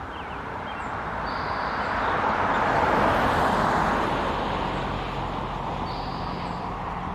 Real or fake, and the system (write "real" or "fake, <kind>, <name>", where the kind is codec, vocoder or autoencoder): real